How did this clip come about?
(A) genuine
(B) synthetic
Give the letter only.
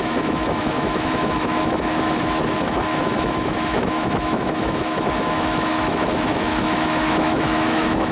B